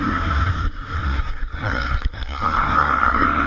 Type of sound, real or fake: fake